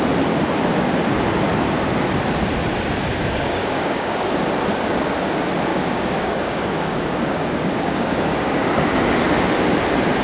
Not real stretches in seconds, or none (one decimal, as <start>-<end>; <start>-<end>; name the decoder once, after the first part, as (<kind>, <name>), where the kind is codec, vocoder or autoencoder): 3.2-4.3 (codec, DAC); 5.7-8.7